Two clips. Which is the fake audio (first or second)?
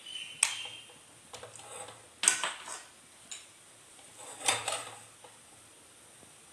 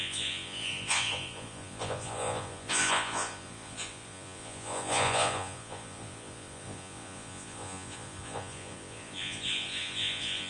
second